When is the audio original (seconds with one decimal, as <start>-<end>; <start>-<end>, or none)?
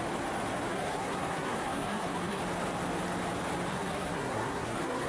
0.0-0.7; 2.4-3.7